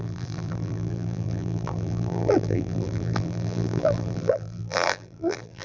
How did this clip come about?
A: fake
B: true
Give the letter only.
A